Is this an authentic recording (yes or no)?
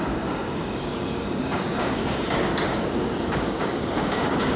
no